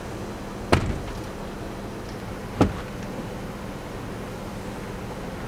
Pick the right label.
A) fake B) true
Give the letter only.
B